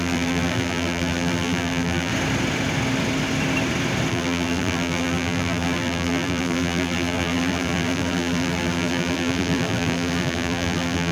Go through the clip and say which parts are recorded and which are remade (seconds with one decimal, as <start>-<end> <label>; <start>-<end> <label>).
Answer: 0.0-2.1 remade; 2.1-4.1 recorded; 4.1-11.1 remade